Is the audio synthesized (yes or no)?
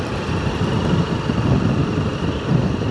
no